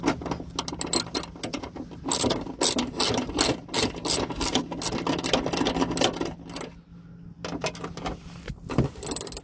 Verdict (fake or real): real